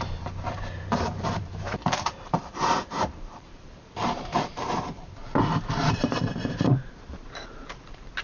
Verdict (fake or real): fake